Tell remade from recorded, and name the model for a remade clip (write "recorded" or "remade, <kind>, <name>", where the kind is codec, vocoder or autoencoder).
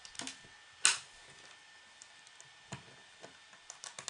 recorded